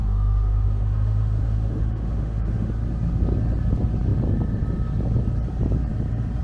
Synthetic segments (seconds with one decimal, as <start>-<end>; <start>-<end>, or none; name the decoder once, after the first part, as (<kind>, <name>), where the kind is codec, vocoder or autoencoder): 0.0-2.7 (autoencoder, DAC-VAE)